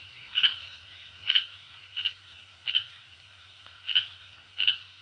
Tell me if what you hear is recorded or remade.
remade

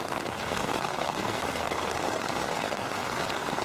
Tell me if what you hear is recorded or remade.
remade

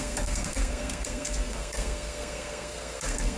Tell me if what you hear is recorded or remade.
remade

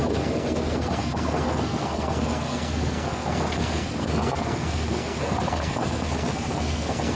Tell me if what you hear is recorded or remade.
remade